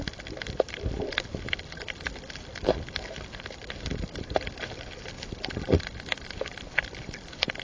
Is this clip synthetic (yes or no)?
no